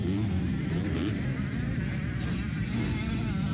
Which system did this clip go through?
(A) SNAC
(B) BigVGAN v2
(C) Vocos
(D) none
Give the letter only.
B